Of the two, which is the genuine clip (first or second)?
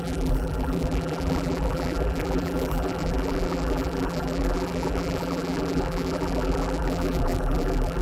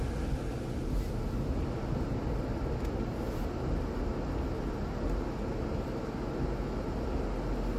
second